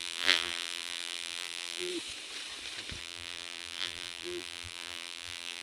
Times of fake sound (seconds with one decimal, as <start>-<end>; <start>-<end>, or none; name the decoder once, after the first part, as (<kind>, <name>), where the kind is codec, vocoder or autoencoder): 0.0-1.9 (vocoder, BigVGAN v2); 3.0-5.6